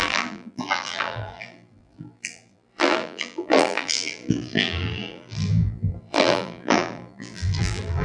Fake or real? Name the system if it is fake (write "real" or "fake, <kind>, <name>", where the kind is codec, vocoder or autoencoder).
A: fake, vocoder, BigVGAN v2